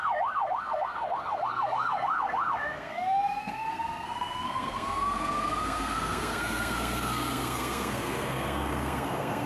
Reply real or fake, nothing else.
fake